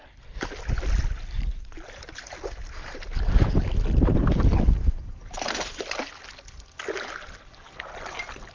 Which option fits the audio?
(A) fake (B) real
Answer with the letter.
B